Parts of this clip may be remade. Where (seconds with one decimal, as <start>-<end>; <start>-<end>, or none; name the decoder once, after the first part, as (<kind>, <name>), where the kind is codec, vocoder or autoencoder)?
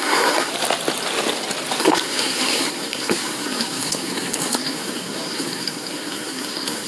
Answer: 0.0-0.5 (codec, SNAC); 1.8-6.9